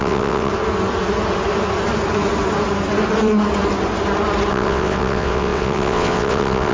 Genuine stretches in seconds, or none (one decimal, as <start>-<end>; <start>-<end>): 0.5-4.5